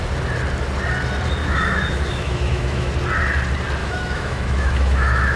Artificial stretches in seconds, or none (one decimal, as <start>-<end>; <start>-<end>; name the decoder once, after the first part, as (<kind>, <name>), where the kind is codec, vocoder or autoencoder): 1.4-2.9 (autoencoder, DAC-VAE); 3.8-5.4